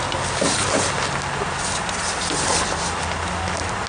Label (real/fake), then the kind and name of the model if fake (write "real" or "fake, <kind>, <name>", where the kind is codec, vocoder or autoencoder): real